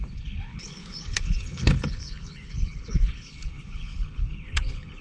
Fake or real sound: fake